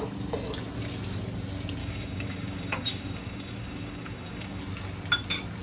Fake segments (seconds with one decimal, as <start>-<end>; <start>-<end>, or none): 1.8-4.6